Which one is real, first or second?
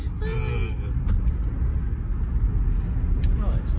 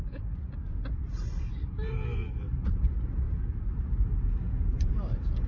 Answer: first